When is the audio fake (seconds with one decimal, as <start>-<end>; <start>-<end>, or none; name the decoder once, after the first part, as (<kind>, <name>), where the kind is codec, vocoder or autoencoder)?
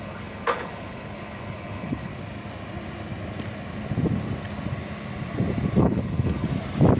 0.0-2.1 (codec, HILCodec); 5.8-6.5